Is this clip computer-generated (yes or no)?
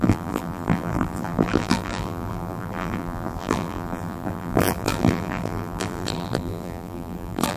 yes